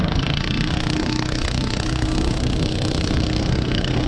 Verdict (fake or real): fake